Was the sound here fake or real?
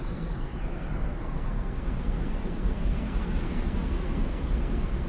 fake